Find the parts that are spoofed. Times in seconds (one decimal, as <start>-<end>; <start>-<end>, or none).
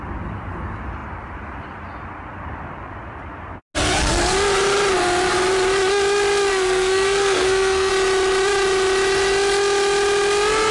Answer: 6.5-7.9